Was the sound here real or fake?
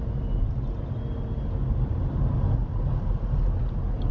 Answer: real